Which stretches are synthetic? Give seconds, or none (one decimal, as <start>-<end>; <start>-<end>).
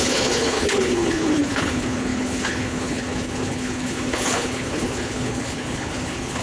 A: 0.0-6.4